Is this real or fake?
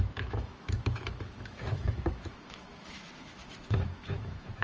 fake